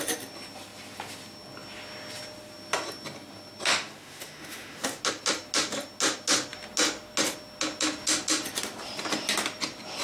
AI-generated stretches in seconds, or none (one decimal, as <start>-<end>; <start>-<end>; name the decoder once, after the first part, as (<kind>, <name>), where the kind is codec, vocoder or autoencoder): 3.7-5.0 (autoencoder, DAC-VAE)